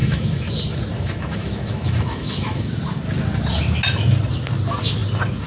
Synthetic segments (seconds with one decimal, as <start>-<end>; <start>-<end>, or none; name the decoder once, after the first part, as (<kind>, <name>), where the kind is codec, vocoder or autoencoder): 0.0-0.5 (autoencoder, DAC-VAE); 0.9-2.7